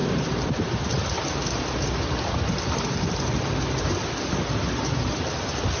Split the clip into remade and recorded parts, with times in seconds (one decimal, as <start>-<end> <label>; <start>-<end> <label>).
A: 0.0-5.8 recorded

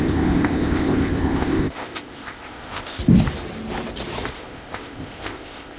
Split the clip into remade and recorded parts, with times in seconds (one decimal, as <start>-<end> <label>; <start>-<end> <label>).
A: 0.0-3.0 remade; 3.0-4.3 recorded; 4.3-5.8 remade

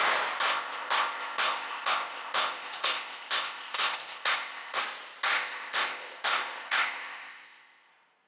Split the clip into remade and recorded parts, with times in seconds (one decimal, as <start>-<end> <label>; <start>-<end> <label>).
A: 0.0-0.5 recorded; 0.5-4.8 remade; 4.8-5.3 recorded; 5.3-7.9 remade; 7.9-8.3 recorded